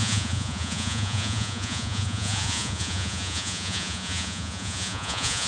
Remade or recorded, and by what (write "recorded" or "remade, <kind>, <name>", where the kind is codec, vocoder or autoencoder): remade, vocoder, Vocos